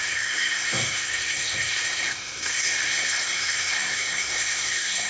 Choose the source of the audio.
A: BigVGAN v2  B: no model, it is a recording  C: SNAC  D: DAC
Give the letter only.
C